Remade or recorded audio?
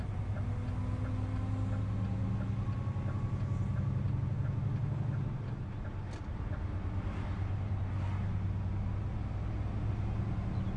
recorded